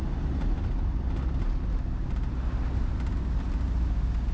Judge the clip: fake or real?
real